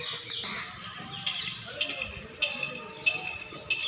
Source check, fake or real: real